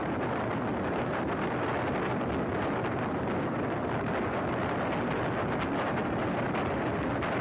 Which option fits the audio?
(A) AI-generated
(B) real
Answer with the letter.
B